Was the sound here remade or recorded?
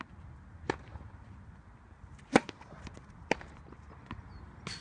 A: recorded